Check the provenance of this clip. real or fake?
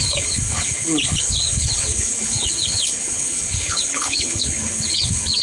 fake